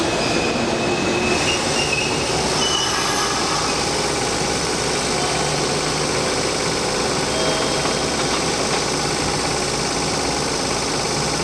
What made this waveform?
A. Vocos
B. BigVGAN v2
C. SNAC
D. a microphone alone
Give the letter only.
D